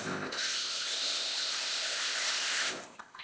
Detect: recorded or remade remade